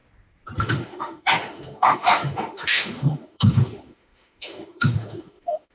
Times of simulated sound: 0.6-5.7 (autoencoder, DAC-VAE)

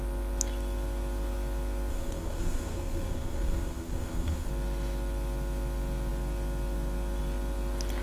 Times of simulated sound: 1.9-4.5 (codec, SNAC)

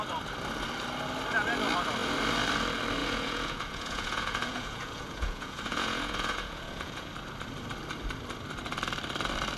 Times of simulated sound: 3.0-7.1 (vocoder, Vocos)

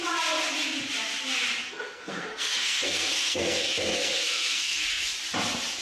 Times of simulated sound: 1.6-5.1 (codec, SNAC)

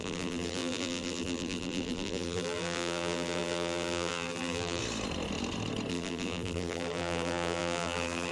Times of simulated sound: 0.0-4.8 (vocoder, BigVGAN v2); 5.9-8.3

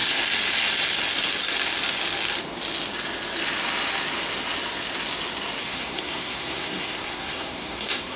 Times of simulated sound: 5.6-8.2 (codec, SNAC)

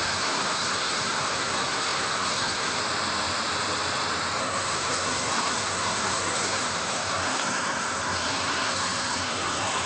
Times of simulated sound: 0.0-2.8 (codec, SNAC); 4.4-9.9

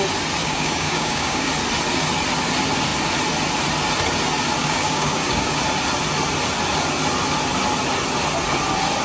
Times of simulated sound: 0.4-1.5 (codec, DAC); 4.6-5.6